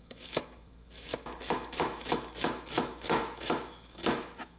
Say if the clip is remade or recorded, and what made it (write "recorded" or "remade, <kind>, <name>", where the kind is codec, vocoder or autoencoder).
remade, autoencoder, DAC-VAE